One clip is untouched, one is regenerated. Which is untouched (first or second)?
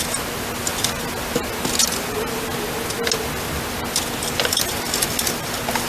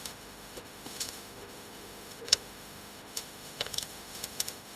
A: first